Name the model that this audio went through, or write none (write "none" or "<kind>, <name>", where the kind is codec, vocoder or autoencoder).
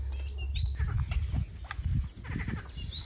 none